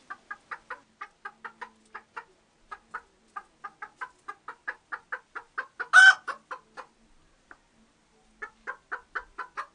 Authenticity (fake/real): real